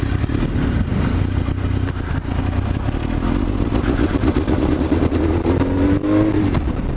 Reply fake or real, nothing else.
real